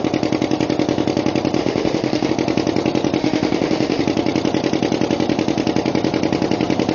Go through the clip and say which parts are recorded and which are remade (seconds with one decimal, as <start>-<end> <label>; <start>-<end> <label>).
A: 0.0-1.6 recorded; 1.6-2.3 remade; 2.3-3.2 recorded; 3.2-4.0 remade; 4.0-6.9 recorded